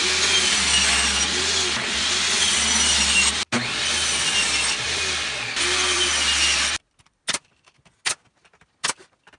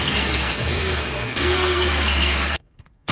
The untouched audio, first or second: first